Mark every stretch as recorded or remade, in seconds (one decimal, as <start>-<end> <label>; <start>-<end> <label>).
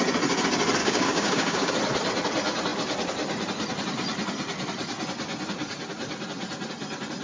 0.0-0.8 recorded; 0.8-1.7 remade; 1.7-7.2 recorded